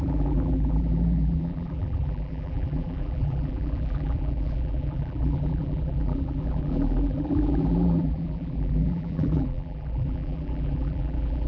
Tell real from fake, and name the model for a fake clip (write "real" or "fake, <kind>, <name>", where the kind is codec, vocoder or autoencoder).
fake, vocoder, BigVGAN v2